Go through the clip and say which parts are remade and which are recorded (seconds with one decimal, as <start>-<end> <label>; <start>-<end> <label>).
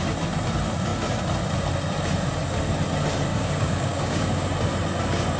0.0-3.3 recorded; 3.3-4.5 remade; 4.5-5.4 recorded